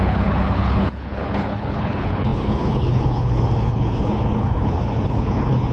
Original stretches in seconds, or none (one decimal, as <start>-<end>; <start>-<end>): none